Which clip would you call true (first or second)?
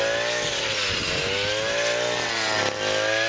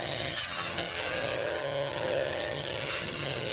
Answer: first